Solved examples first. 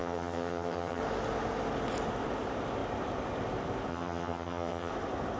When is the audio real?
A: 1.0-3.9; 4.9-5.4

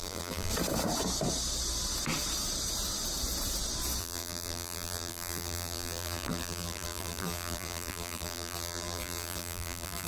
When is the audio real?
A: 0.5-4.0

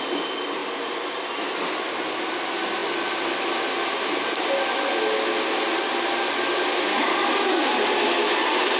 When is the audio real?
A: 0.0-8.8

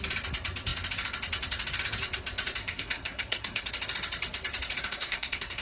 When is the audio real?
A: 0.0-2.6; 3.7-4.8

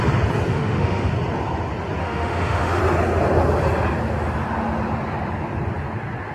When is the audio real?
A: 0.0-0.5; 1.1-2.0; 2.8-6.3

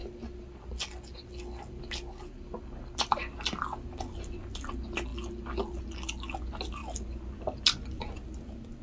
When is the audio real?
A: 0.0-8.8

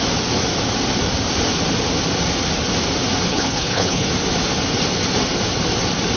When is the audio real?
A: 0.0-3.3; 4.1-6.2